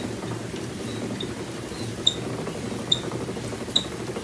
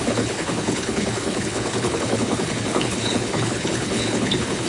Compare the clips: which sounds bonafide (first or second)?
first